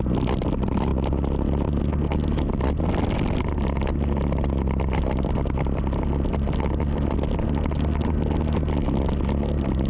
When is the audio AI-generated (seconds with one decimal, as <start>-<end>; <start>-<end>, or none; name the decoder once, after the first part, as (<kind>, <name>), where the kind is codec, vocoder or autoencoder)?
none